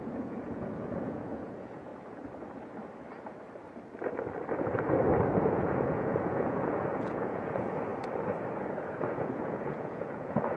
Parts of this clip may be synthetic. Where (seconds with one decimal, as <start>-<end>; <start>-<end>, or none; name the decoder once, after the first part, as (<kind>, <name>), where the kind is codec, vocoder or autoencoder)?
0.0-1.9 (vocoder, Vocos); 5.4-7.9; 9.2-10.6